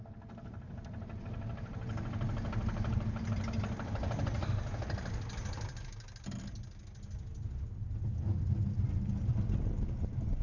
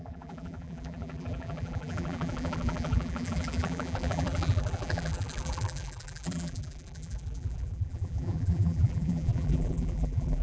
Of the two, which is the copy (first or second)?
second